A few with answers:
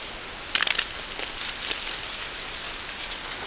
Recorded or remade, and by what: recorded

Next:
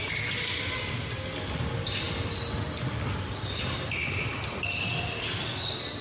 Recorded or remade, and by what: recorded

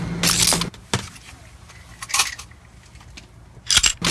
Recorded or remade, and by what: recorded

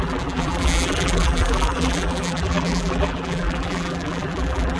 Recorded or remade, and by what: remade, vocoder, BigVGAN v2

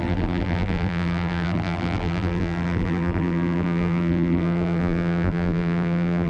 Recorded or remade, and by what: remade, vocoder, BigVGAN v2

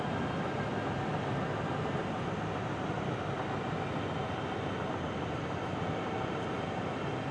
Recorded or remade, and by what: recorded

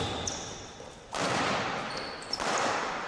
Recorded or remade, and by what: recorded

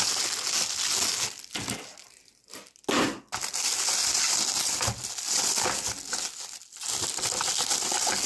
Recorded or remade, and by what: recorded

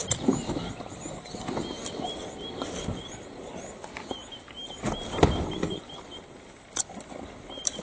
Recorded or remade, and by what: remade, vocoder, BigVGAN v2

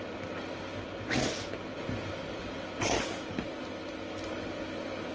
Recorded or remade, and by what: recorded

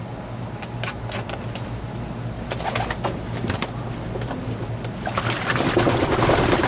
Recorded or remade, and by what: recorded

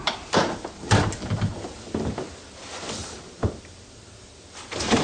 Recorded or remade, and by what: recorded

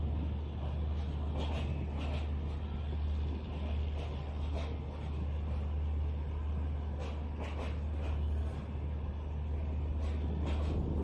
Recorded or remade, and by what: recorded